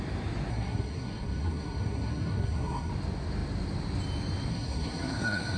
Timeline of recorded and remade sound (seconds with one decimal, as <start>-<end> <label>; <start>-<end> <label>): 0.0-0.5 recorded; 0.5-2.9 remade; 2.9-4.5 recorded; 4.5-5.6 remade